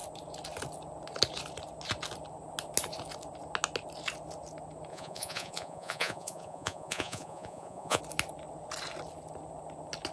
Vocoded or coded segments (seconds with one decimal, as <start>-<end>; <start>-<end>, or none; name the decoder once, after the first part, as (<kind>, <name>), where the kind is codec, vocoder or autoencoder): 4.9-8.0 (vocoder, Vocos)